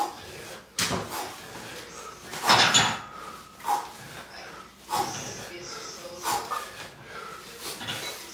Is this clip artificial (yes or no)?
no